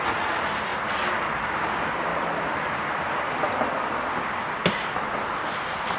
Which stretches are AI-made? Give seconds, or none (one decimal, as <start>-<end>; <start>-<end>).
2.1-6.0